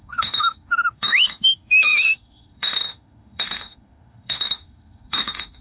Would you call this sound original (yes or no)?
no